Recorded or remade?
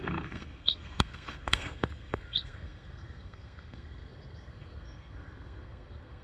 remade